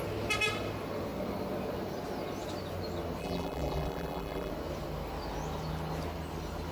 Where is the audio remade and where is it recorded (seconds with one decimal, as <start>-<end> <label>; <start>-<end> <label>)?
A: 0.0-3.2 recorded; 3.2-4.5 remade; 4.5-6.7 recorded